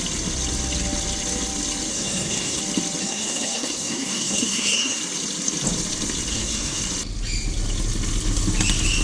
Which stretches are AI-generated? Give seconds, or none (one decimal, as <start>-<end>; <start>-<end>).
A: 1.9-2.6; 3.0-5.0; 6.3-6.8